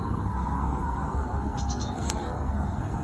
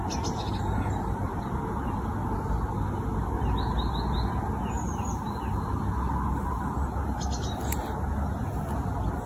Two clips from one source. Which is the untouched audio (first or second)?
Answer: second